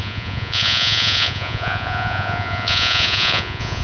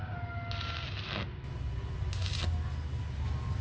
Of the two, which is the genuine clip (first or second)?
second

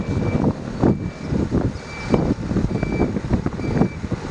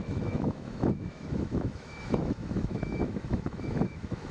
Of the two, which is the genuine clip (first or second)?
first